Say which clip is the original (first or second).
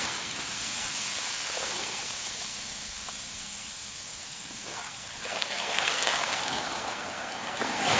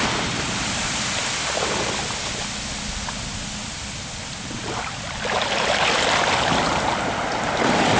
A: second